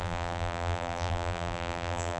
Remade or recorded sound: remade